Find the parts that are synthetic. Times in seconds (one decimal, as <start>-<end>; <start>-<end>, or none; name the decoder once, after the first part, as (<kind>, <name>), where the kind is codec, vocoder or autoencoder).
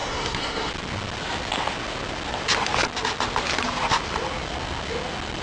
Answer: 0.0-0.7 (codec, SNAC)